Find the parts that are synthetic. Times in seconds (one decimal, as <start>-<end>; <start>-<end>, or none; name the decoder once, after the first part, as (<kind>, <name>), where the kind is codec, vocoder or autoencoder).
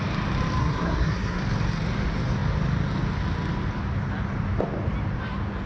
0.6-1.4 (codec, SNAC)